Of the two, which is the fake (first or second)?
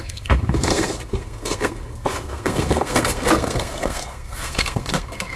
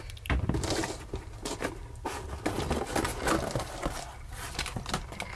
first